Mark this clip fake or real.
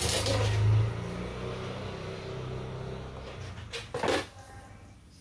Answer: real